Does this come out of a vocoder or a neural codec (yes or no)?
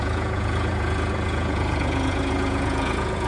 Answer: yes